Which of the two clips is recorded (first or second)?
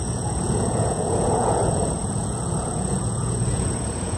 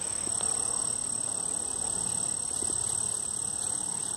second